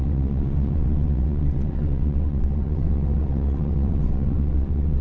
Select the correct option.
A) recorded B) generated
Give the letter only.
B